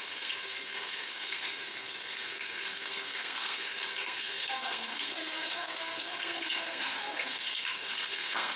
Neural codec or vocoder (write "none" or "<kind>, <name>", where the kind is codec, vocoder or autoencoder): codec, SNAC